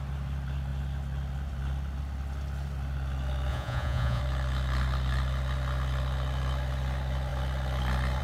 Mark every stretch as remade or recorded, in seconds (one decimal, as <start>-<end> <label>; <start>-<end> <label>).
0.0-3.5 recorded; 3.5-4.2 remade; 4.2-8.2 recorded